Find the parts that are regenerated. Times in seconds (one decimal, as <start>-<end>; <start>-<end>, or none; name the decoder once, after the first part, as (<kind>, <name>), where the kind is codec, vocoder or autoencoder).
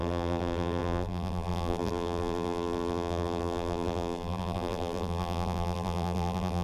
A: 0.0-6.6 (vocoder, BigVGAN v2)